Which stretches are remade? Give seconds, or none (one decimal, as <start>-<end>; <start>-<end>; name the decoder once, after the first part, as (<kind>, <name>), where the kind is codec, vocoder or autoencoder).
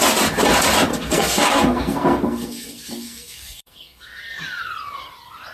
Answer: 0.9-4.2 (codec, SNAC)